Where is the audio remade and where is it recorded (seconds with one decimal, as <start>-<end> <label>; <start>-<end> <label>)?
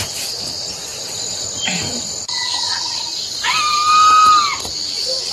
0.0-5.3 recorded